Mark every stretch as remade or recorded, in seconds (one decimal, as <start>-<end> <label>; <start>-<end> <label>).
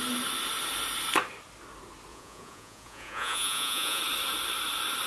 0.0-2.1 recorded; 2.1-4.0 remade; 4.0-5.1 recorded